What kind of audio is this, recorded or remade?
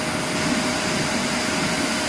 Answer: recorded